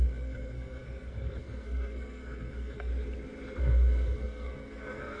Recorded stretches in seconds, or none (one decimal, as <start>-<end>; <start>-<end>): 2.9-3.6